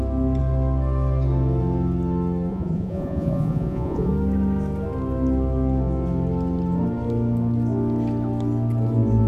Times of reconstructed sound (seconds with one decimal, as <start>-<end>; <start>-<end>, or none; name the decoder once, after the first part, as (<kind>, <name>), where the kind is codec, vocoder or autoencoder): 2.5-4.1 (vocoder, Vocos)